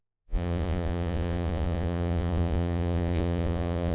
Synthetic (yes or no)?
yes